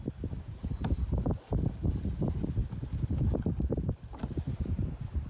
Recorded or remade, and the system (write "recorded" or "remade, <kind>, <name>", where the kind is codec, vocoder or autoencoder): recorded